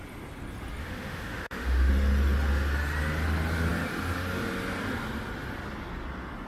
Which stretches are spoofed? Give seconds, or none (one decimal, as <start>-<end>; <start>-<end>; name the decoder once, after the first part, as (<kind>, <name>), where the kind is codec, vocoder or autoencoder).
0.8-1.9 (autoencoder, DAC-VAE)